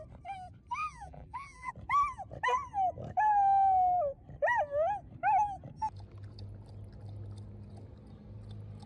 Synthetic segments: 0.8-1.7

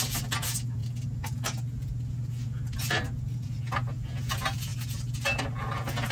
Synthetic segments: none

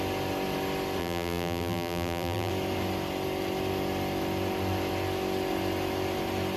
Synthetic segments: 1.0-2.5

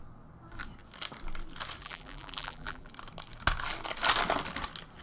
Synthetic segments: 1.8-2.9

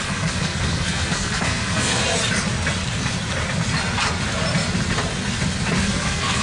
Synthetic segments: 0.0-2.0; 5.8-6.4

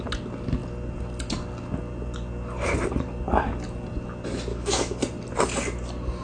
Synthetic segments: 4.5-5.0